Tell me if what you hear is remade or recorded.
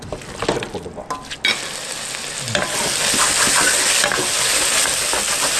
recorded